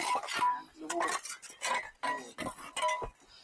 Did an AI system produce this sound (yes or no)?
no